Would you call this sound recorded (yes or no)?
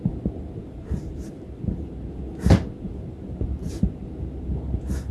yes